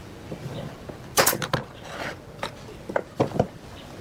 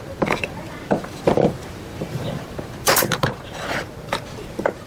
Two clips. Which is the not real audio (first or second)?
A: second